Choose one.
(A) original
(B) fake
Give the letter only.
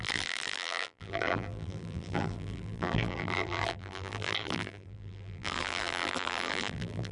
B